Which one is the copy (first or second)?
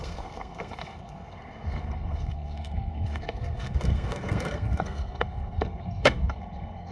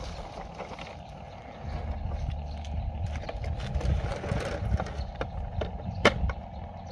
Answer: first